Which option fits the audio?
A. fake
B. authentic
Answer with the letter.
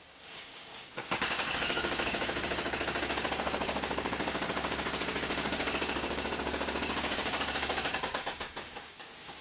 A